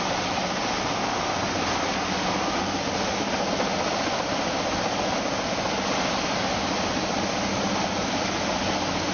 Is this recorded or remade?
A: recorded